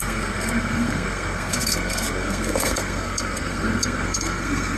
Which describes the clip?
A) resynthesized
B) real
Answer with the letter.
A